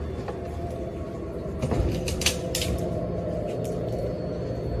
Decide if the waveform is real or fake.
real